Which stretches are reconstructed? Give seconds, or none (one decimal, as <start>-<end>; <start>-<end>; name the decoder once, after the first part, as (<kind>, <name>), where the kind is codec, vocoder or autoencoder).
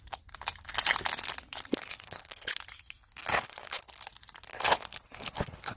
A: 1.7-2.6 (codec, HILCodec); 3.3-3.8; 4.5-5.8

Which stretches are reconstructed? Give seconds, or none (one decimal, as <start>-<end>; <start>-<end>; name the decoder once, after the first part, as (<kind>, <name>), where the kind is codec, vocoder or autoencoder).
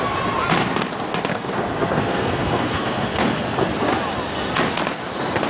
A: 1.3-3.2 (codec, SNAC)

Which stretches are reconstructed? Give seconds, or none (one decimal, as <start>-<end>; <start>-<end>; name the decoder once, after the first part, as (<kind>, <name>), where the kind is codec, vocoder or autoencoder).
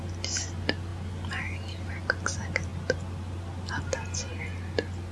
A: none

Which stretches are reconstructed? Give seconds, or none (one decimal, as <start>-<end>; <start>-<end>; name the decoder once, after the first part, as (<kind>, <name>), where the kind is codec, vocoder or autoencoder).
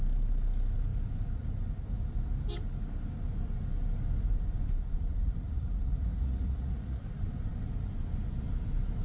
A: 4.9-7.0 (vocoder, Vocos)